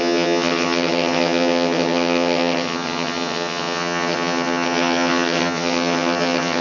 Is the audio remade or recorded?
remade